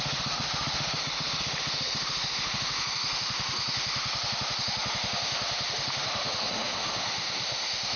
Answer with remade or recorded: remade